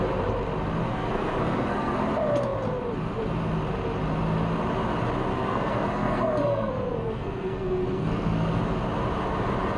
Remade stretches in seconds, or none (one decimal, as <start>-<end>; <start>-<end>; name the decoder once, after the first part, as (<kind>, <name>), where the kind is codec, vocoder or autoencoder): 0.9-2.0 (codec, SNAC); 5.3-8.6